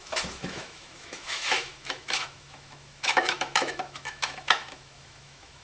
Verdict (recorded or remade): remade